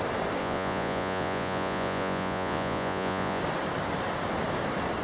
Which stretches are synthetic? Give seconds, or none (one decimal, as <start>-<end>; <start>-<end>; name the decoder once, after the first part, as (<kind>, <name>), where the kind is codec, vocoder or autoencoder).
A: 0.4-3.4 (vocoder, Vocos)

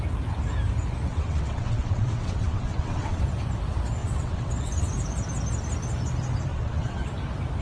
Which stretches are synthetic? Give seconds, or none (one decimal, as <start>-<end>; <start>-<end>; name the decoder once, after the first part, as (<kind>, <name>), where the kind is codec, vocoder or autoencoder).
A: 1.1-3.2 (vocoder, WaveNeXt); 4.0-4.9; 6.5-7.1